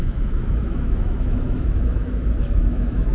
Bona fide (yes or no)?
no